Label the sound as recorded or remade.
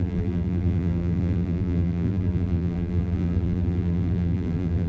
remade